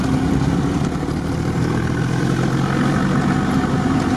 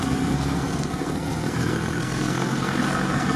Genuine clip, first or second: first